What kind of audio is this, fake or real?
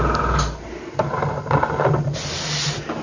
fake